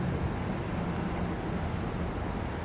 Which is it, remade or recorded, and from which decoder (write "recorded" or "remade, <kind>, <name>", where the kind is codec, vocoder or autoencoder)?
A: recorded